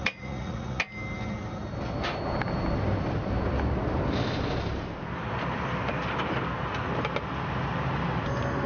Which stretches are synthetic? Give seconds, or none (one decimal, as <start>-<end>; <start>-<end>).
0.0-0.8